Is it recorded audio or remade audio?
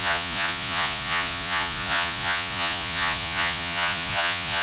remade